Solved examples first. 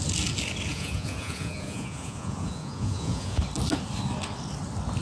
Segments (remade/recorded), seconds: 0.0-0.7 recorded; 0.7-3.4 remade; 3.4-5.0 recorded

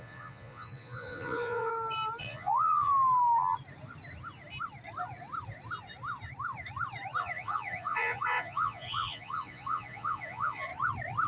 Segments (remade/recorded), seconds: 0.0-1.7 remade; 1.7-2.2 recorded; 2.2-2.9 remade; 2.9-7.2 recorded; 7.2-10.7 remade; 10.7-11.3 recorded

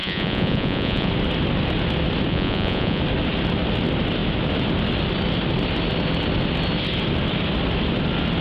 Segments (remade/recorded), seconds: 0.0-1.1 remade; 1.1-2.3 recorded; 2.3-3.0 remade; 3.0-8.4 recorded

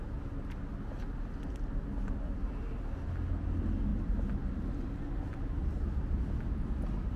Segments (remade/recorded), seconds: 0.0-7.2 recorded